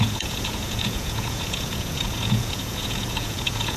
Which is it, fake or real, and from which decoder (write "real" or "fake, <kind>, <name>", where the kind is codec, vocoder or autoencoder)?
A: fake, vocoder, Vocos